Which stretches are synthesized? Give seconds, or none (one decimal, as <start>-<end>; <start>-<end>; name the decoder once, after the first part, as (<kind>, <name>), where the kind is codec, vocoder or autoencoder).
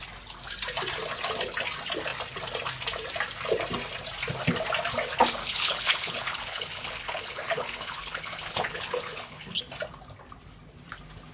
5.4-9.6 (codec, HILCodec)